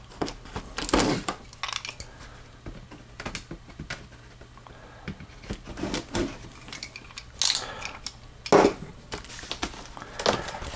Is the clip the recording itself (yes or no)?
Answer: yes